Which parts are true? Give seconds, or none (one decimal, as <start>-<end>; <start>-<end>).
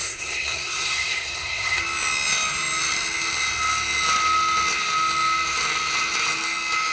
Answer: 1.8-6.9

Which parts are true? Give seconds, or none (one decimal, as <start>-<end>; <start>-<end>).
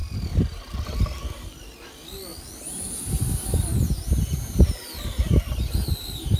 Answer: 0.0-6.4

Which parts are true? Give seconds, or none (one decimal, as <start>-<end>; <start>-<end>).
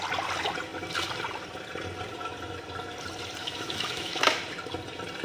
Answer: 0.0-3.4; 4.4-5.2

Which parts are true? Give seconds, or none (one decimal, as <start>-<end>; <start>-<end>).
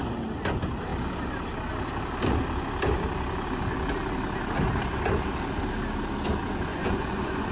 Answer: 0.0-6.7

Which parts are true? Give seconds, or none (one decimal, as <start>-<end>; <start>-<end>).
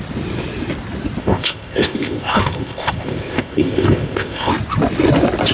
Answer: 0.0-1.2; 4.5-5.5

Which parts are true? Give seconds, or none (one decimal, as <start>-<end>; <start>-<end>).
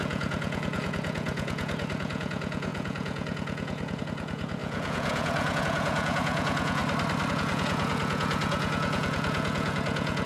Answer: 6.8-7.3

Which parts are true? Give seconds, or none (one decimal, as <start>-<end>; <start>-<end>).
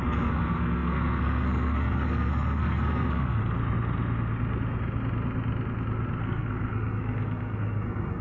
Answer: 3.4-6.2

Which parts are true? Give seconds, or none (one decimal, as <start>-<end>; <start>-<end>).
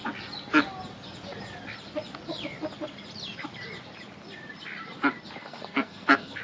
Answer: 0.0-5.4